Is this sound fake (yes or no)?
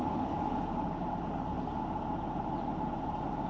no